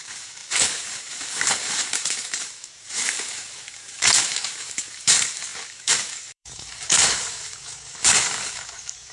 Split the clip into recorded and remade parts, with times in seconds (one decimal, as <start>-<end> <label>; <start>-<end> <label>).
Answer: 0.0-9.1 remade